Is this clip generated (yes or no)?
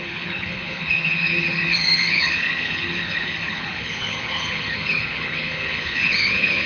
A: yes